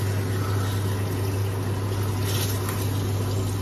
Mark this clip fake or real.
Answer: real